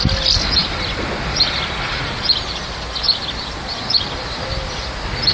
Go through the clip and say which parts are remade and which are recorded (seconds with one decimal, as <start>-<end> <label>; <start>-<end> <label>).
0.0-5.3 recorded